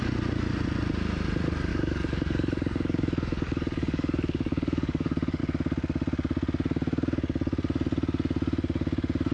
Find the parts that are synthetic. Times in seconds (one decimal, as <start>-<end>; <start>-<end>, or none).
1.7-5.4